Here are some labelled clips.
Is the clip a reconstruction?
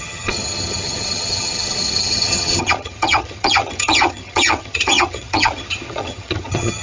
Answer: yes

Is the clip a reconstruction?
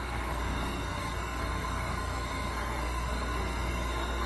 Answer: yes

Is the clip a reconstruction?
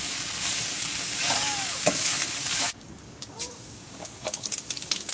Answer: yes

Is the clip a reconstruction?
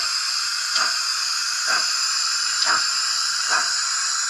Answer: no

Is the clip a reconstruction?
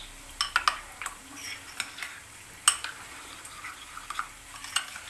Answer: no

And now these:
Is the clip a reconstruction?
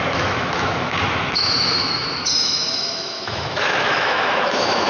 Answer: yes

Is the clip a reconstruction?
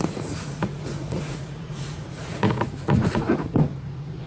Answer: yes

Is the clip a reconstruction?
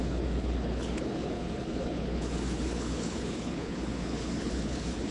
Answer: yes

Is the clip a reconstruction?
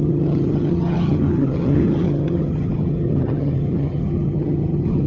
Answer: yes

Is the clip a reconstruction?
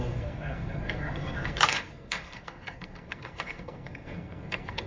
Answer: yes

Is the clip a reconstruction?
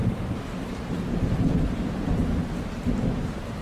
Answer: yes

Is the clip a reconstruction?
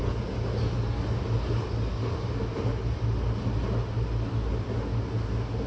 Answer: no